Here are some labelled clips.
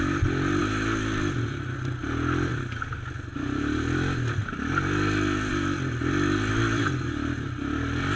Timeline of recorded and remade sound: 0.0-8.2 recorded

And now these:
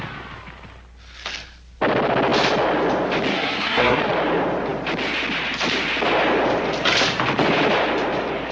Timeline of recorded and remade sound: 0.0-3.3 recorded; 3.3-4.0 remade; 4.0-8.5 recorded